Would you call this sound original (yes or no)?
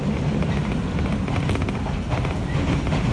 yes